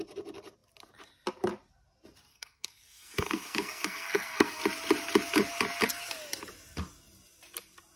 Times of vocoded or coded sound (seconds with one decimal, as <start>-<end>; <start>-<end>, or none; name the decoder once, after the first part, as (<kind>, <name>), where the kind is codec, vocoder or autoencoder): 2.3-4.6 (codec, SNAC)